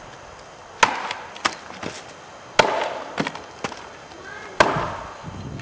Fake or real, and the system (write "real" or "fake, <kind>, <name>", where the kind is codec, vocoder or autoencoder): real